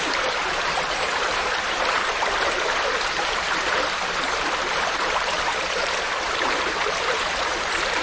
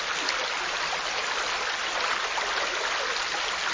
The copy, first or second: first